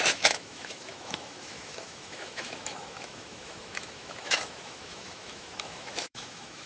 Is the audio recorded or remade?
remade